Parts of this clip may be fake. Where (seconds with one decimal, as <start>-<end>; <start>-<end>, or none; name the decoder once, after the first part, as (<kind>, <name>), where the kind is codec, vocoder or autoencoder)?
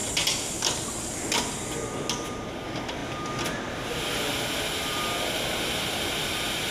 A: none